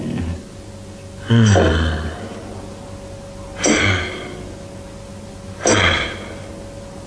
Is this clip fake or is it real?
real